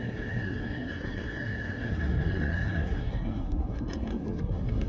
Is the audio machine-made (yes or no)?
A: yes